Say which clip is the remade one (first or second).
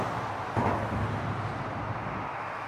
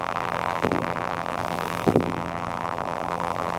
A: second